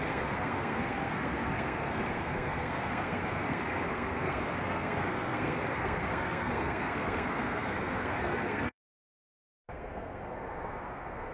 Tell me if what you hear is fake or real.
fake